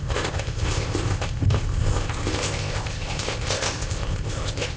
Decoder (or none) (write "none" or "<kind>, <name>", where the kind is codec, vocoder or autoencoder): codec, ZipCodec